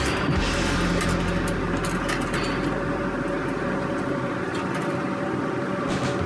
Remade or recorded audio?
recorded